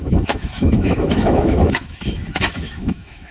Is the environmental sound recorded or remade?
remade